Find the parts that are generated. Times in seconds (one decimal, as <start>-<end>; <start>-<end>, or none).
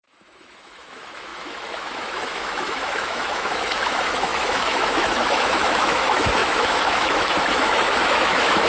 0.0-8.7